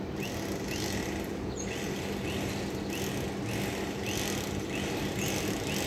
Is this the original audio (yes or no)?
yes